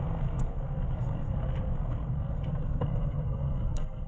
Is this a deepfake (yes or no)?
yes